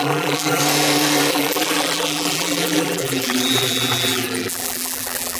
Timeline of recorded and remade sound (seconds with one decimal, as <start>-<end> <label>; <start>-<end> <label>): 0.0-0.6 remade; 0.6-1.3 recorded; 1.3-5.4 remade